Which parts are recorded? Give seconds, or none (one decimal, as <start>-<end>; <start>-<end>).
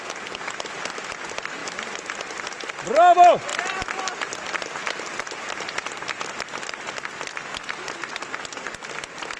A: 0.0-7.6; 8.1-9.4